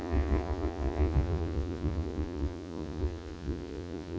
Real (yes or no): no